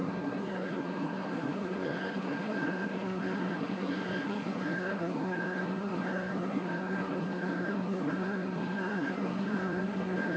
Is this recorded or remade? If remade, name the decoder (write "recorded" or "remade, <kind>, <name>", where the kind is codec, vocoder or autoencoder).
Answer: remade, codec, SNAC